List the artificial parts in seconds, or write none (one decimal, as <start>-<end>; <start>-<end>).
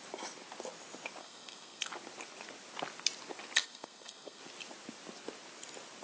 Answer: 1.2-1.9; 3.6-4.4